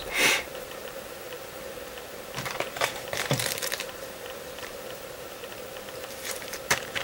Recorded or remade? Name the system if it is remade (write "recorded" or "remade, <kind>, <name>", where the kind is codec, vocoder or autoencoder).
remade, vocoder, BigVGAN v2